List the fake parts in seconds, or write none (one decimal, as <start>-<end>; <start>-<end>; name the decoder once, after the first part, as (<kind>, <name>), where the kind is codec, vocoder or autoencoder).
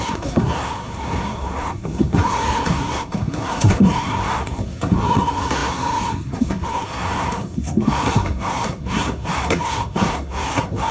0.0-10.9 (codec, SNAC)